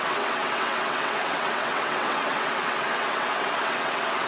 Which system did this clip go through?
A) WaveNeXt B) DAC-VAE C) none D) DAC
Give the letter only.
A